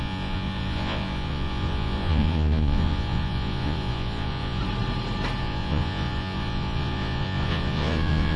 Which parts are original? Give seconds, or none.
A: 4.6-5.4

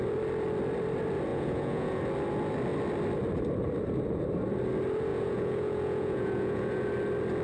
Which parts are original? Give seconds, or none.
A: 0.0-1.3; 2.0-5.1; 6.9-7.4

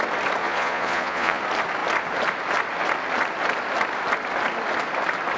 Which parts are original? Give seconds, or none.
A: 0.0-0.4; 1.4-5.4

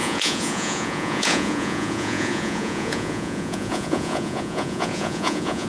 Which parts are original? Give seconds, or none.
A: none